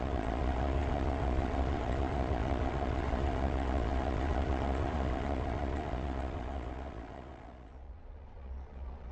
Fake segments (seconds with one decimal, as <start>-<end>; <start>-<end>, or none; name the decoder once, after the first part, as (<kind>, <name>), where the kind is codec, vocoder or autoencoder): 0.0-9.1 (vocoder, Vocos)